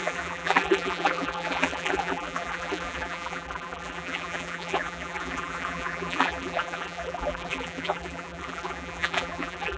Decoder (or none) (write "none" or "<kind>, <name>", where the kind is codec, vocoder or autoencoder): vocoder, BigVGAN v2